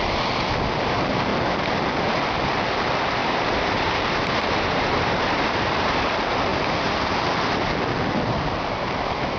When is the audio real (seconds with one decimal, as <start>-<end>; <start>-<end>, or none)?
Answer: 0.0-3.2; 6.1-9.4